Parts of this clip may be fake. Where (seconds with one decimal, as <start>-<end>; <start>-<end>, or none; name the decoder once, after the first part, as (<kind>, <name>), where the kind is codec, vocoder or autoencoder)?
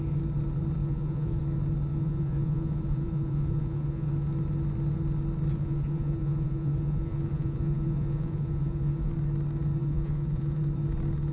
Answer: 0.8-1.4 (vocoder, Vocos); 1.9-4.1; 5.5-9.1; 9.8-10.6